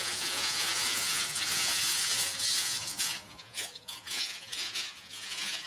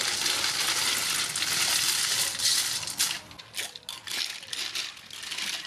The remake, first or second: first